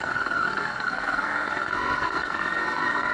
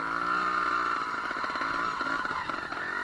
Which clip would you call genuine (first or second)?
second